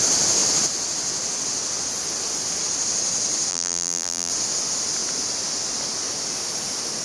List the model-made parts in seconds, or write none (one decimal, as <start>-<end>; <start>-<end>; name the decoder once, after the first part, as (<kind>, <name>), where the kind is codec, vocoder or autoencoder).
3.5-4.3 (vocoder, BigVGAN v2)